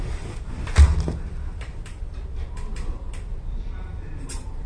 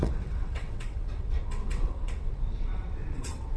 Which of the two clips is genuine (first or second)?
first